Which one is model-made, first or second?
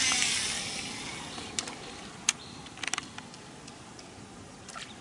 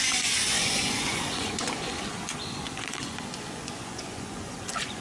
second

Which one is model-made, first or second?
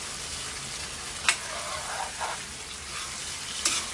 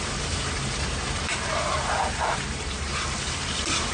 second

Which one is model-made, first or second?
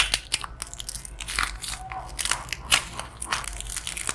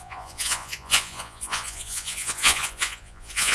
second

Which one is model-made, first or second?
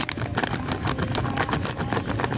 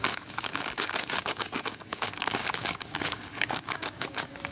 second